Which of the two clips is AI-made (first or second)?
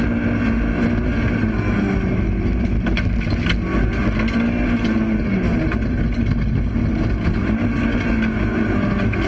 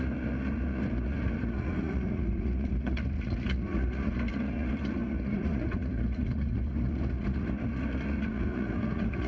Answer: second